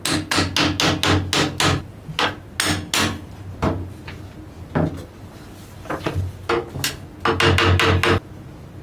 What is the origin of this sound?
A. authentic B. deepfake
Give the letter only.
A